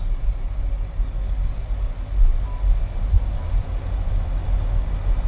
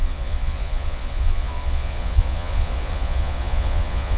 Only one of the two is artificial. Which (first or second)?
second